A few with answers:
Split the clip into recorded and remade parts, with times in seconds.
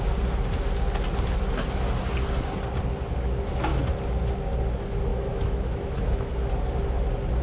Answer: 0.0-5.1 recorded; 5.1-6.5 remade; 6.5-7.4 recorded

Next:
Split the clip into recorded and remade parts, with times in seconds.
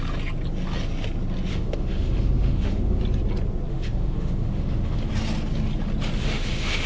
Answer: 0.0-1.5 recorded; 1.5-3.0 remade; 3.0-3.7 recorded; 3.7-5.1 remade; 5.1-6.2 recorded; 6.2-6.9 remade